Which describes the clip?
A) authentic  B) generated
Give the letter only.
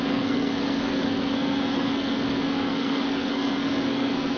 B